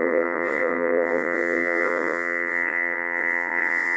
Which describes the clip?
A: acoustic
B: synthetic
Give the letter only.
B